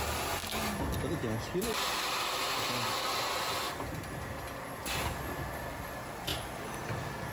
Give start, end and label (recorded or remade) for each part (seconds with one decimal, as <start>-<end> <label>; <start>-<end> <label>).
0.0-7.3 recorded